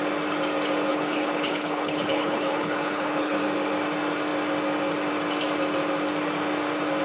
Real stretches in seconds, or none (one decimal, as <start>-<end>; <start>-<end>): 0.0-0.9; 3.4-7.0